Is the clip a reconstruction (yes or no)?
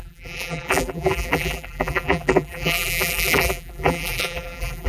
yes